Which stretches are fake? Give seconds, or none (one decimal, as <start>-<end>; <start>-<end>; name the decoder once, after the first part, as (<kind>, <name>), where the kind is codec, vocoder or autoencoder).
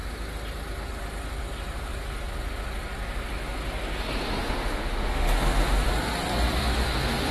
4.4-5.9 (autoencoder, DAC-VAE); 6.6-7.3